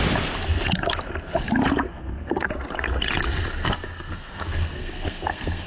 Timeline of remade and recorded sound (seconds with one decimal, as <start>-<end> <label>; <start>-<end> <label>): 0.0-1.9 recorded; 1.9-2.5 remade; 2.5-3.5 recorded; 3.5-5.7 remade